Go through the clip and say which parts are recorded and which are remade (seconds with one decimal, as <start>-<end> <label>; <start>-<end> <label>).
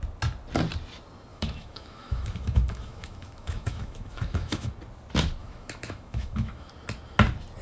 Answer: 0.0-1.3 recorded; 1.3-4.7 remade; 4.7-5.4 recorded; 5.4-6.7 remade; 6.7-7.6 recorded